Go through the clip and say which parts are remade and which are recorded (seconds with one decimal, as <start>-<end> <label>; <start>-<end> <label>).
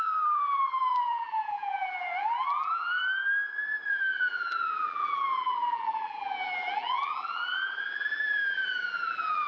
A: 0.0-3.0 remade; 3.0-3.9 recorded; 3.9-9.5 remade